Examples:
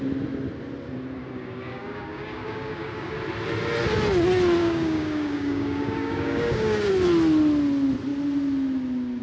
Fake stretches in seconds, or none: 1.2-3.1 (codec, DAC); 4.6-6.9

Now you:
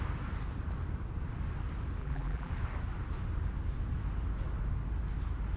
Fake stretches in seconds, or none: 2.0-2.5 (vocoder, BigVGAN v2)

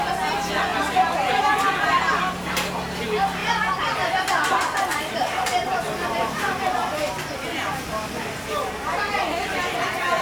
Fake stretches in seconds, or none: 0.7-1.9 (vocoder, BigVGAN v2); 3.4-8.1

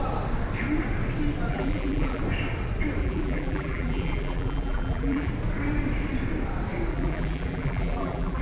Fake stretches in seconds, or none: 1.5-2.2 (vocoder, BigVGAN v2); 3.0-5.3; 6.9-8.4